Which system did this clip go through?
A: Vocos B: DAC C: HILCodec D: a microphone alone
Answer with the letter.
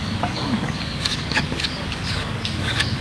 B